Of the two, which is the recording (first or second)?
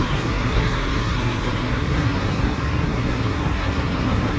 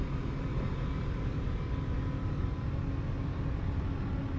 second